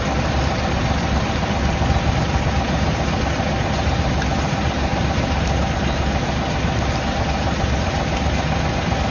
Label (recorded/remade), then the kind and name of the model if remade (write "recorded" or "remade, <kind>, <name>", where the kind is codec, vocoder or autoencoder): recorded